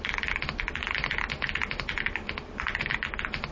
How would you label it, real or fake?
real